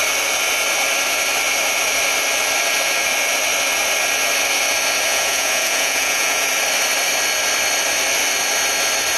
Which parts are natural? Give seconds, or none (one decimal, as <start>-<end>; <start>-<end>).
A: 0.0-5.1; 6.5-9.2